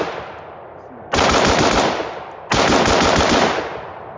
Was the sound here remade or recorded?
recorded